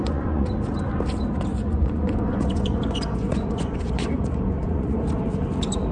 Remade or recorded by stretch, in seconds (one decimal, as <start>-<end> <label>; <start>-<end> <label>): 0.0-0.5 remade; 0.5-1.5 recorded; 1.5-5.0 remade; 5.0-5.9 recorded